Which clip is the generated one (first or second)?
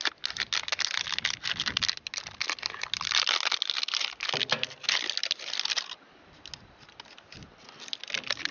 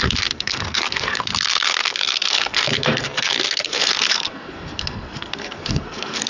second